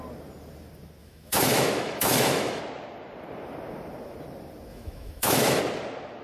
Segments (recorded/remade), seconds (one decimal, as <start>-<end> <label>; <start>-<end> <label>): 0.0-1.0 recorded; 1.0-2.6 remade; 2.6-4.7 recorded; 4.7-5.6 remade; 5.6-6.2 recorded